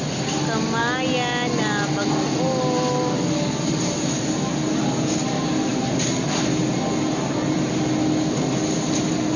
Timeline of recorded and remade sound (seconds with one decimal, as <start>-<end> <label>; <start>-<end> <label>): 0.0-9.4 recorded